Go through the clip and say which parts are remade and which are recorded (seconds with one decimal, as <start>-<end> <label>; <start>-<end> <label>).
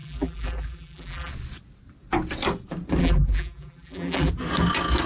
0.0-1.3 remade; 1.3-3.0 recorded; 3.0-4.3 remade; 4.3-5.1 recorded